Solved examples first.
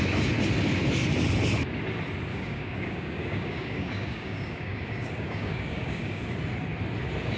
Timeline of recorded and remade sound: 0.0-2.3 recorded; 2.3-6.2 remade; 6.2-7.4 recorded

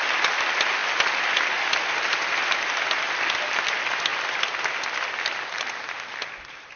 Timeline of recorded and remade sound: 0.0-6.8 recorded

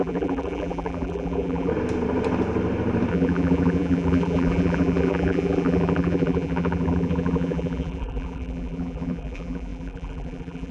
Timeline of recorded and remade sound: 0.0-1.7 remade; 1.7-3.1 recorded; 3.1-10.7 remade

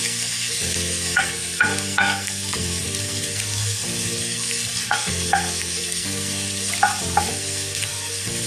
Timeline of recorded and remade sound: 0.0-6.7 remade; 6.7-7.2 recorded; 7.2-8.5 remade

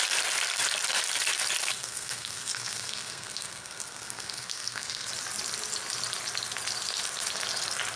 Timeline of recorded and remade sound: 0.0-1.8 recorded; 1.8-5.1 remade; 5.1-8.0 recorded